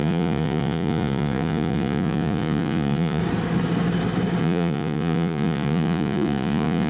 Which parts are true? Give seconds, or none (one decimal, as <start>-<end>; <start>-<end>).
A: 3.2-4.4